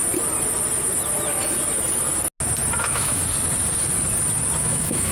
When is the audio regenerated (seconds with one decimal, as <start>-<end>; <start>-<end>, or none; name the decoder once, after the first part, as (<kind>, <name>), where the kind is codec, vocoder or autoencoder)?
2.8-3.2 (autoencoder, DAC-VAE); 4.6-5.1